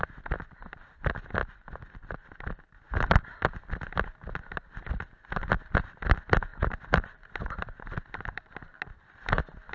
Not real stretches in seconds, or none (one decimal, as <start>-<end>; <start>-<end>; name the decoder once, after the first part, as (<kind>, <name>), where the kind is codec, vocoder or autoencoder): 6.5-7.3 (vocoder, BigVGAN v2)